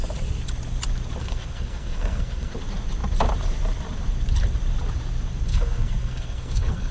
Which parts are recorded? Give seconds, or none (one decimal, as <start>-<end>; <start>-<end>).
0.0-1.2; 2.5-5.5